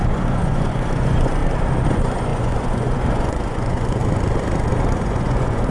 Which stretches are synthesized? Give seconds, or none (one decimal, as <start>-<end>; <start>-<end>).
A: 0.0-1.4; 1.9-4.0; 4.9-5.7

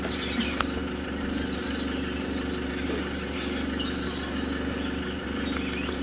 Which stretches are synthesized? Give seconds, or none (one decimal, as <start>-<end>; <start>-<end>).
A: none

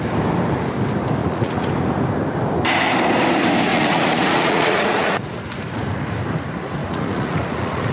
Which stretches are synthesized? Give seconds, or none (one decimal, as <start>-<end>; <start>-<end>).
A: 1.2-1.7; 3.7-5.8; 6.8-7.9

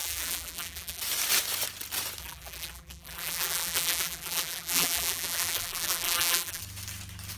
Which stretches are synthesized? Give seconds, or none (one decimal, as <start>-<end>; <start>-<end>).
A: 0.0-1.0; 2.2-6.6

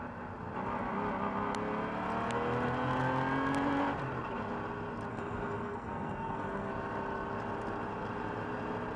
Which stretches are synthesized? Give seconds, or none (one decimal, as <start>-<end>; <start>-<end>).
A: 5.1-6.7

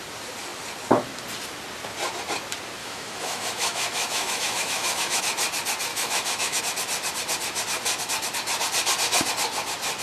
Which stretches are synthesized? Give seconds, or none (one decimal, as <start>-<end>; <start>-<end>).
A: 2.8-5.2; 5.9-6.6

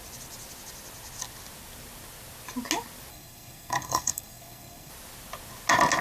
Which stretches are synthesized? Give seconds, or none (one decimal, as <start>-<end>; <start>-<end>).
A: 3.1-4.9

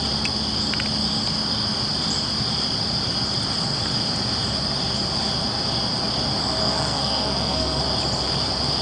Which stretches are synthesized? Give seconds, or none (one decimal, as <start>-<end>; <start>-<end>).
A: 6.6-7.8